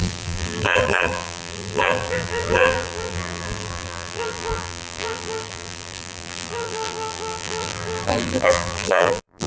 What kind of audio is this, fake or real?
fake